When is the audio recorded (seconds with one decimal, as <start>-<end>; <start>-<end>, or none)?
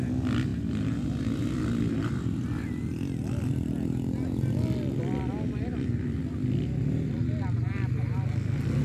0.0-8.8